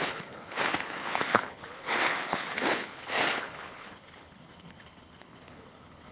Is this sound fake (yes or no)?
yes